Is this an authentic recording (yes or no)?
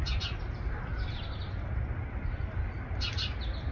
yes